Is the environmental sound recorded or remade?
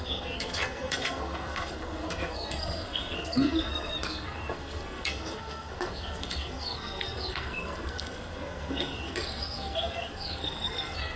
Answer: remade